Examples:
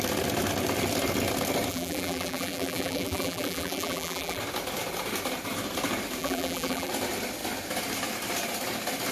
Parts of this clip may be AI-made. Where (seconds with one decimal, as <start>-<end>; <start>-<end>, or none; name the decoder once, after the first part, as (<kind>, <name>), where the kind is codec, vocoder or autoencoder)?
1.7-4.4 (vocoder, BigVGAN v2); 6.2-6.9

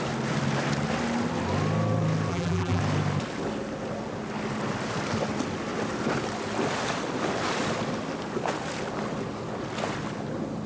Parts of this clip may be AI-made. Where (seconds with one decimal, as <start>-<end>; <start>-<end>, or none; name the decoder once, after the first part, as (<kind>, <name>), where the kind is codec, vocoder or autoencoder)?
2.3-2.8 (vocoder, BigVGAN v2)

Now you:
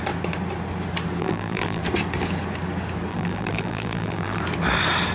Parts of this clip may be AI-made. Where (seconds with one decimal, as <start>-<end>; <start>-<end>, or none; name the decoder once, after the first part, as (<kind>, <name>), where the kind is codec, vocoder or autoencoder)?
1.2-1.8 (vocoder, BigVGAN v2); 3.1-4.4